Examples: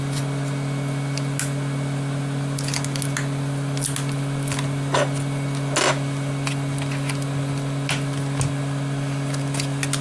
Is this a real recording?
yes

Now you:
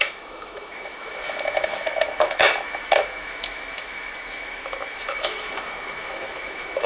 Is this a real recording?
no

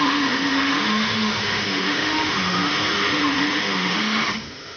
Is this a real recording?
no